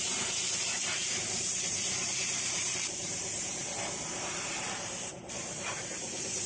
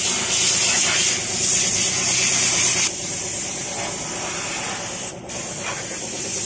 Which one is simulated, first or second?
first